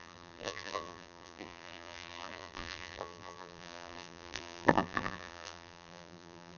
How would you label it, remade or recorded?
remade